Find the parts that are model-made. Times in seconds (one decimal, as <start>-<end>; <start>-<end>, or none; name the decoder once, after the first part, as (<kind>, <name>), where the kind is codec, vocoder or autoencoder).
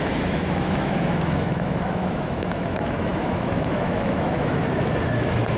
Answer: 0.0-4.6 (autoencoder, DAC-VAE)